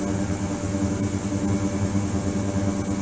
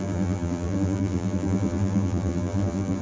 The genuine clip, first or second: first